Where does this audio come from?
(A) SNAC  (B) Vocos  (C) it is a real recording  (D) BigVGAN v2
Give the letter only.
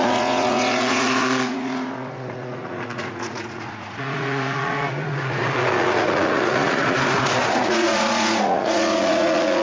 B